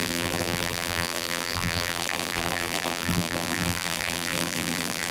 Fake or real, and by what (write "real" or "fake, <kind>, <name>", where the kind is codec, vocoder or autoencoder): fake, vocoder, BigVGAN v2